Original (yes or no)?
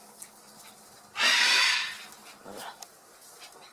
no